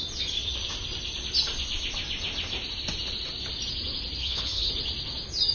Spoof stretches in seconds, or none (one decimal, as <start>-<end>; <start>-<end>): 4.2-4.7